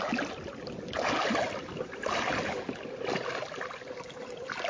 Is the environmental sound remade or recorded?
recorded